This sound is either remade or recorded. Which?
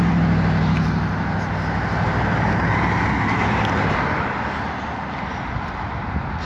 recorded